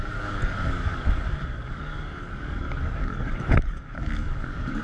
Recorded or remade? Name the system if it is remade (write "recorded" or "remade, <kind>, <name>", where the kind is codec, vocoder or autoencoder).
remade, codec, DAC